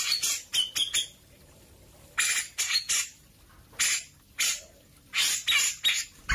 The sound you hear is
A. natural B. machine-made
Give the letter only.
A